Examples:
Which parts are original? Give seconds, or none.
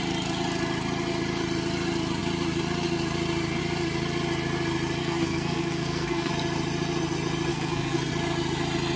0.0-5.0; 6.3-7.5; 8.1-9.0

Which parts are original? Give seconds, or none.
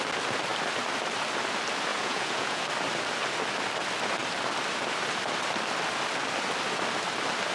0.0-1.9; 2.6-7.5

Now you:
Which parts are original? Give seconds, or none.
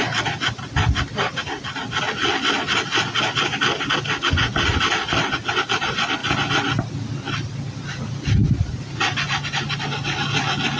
0.0-10.8